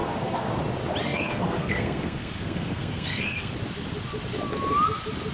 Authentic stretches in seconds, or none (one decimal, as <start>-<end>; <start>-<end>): 0.5-1.0; 3.5-5.3